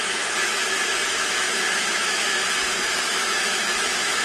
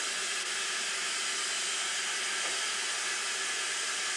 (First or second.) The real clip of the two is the second